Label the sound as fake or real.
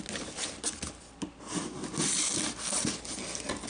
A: real